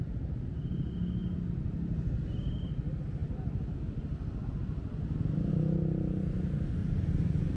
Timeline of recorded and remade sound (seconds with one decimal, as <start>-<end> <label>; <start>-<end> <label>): 0.0-1.2 recorded; 1.2-2.1 remade; 2.1-6.8 recorded; 6.8-7.6 remade